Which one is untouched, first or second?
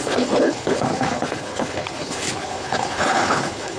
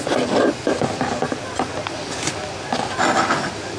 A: second